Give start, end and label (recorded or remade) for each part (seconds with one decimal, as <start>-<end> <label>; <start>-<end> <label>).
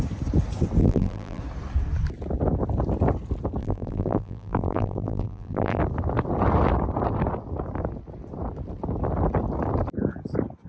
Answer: 0.0-0.8 recorded; 0.8-1.4 remade; 1.4-3.6 recorded; 3.6-5.8 remade; 5.8-10.7 recorded